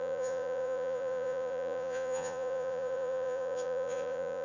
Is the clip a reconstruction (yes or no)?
yes